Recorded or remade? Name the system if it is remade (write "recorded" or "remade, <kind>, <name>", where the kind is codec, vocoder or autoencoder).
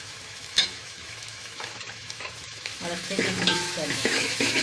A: remade, autoencoder, DAC-VAE